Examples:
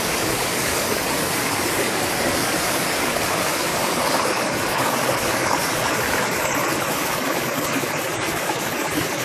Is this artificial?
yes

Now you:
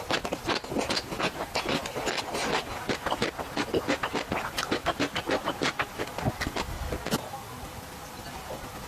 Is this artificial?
no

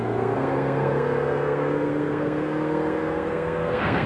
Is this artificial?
yes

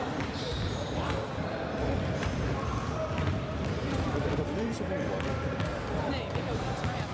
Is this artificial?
yes